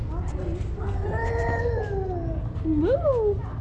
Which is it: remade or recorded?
recorded